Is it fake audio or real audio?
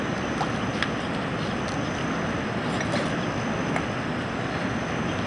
real